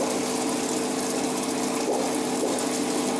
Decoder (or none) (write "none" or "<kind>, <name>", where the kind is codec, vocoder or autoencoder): none